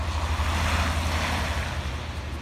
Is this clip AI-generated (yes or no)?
no